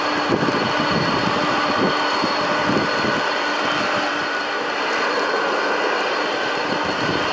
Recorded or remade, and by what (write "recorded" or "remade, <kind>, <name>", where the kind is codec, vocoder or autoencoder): recorded